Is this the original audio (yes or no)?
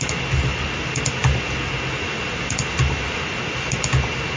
yes